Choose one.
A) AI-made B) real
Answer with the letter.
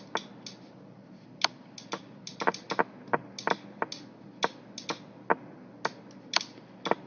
B